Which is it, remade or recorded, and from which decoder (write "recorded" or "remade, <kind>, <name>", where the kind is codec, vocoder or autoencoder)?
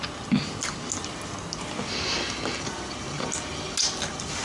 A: recorded